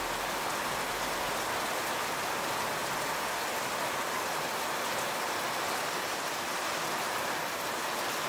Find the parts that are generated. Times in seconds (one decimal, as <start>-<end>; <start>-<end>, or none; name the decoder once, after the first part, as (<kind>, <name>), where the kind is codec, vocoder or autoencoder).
none